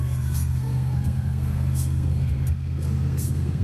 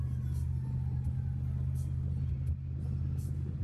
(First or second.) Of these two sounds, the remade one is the first